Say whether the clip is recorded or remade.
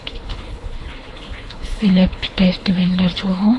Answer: remade